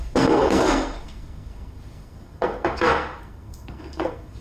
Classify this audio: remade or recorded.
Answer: remade